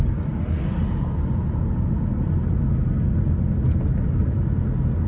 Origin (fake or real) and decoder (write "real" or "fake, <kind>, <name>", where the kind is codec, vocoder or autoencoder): real